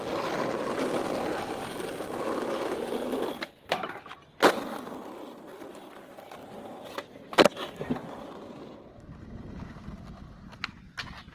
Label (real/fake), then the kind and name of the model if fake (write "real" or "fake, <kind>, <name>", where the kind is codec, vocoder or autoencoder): real